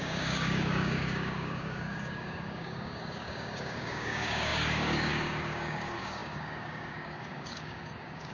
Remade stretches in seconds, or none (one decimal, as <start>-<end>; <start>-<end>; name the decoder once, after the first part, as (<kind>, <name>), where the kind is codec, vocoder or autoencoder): 0.0-8.3 (codec, DAC)